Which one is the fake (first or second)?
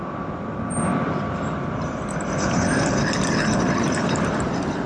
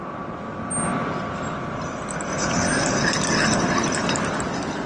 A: first